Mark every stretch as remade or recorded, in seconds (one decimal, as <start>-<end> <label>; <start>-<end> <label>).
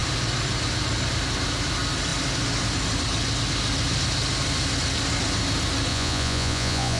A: 0.0-5.9 recorded; 5.9-7.0 remade